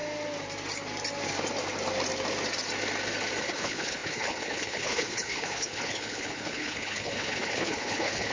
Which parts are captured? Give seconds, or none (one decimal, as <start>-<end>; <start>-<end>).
0.0-3.4